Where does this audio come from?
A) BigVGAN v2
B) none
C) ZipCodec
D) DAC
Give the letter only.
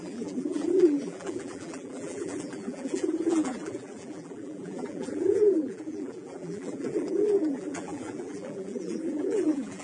A